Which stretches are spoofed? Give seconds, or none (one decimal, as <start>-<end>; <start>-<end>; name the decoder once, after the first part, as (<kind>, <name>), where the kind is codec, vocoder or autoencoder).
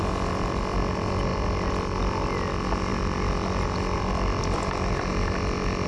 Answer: none